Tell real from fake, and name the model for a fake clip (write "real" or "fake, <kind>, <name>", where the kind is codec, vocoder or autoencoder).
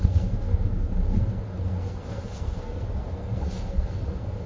fake, codec, SNAC